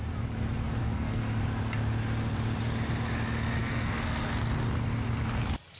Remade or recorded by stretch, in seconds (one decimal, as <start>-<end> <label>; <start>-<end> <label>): 0.0-0.8 recorded; 0.8-1.4 remade; 1.4-3.6 recorded; 3.6-4.3 remade; 4.3-5.8 recorded